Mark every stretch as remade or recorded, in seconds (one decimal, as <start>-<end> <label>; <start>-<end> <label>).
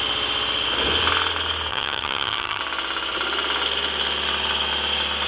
0.0-1.7 recorded; 1.7-2.6 remade; 2.6-5.3 recorded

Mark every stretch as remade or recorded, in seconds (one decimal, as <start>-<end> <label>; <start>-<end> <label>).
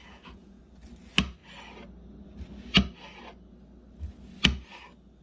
0.0-0.6 remade; 0.6-5.2 recorded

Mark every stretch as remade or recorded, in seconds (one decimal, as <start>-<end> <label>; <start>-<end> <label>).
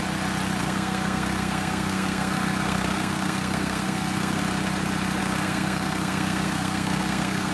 0.0-0.6 recorded; 0.6-4.4 remade; 4.4-5.2 recorded; 5.2-7.5 remade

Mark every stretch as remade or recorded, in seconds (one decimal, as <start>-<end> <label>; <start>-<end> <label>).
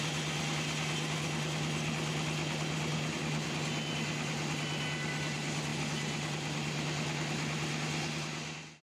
0.0-9.0 recorded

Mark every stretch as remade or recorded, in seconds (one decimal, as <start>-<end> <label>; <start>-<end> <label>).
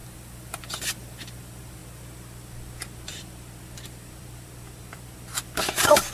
0.0-0.5 recorded; 0.5-1.8 remade; 1.8-3.1 recorded; 3.1-6.1 remade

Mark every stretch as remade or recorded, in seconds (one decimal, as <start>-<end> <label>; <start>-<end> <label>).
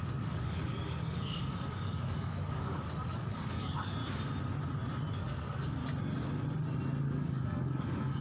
0.0-4.0 remade; 4.0-5.1 recorded; 5.1-5.8 remade; 5.8-7.0 recorded; 7.0-8.2 remade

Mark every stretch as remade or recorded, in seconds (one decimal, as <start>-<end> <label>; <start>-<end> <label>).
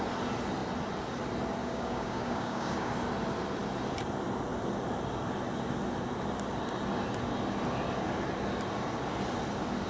0.0-1.6 recorded; 1.6-2.9 remade; 2.9-9.9 recorded